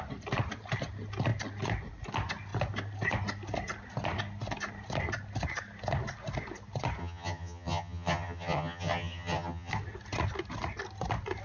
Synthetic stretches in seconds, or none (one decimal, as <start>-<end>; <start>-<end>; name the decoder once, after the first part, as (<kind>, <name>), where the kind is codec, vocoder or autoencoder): 7.0-9.7 (vocoder, HiFi-GAN)